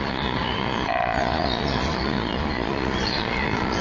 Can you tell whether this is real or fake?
fake